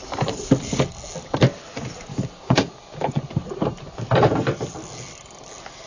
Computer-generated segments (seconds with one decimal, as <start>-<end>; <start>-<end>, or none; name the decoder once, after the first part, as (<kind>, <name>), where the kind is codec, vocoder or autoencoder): 2.1-2.7 (codec, DAC)